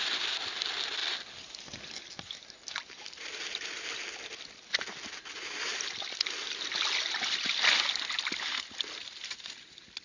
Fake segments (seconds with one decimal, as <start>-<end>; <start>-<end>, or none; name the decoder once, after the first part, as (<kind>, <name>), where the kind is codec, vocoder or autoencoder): none